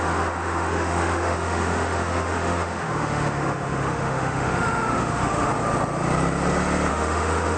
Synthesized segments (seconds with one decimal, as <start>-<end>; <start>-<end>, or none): 0.0-5.5; 6.9-7.6